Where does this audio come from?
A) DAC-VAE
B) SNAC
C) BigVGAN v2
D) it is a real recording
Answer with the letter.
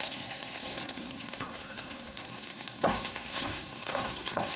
B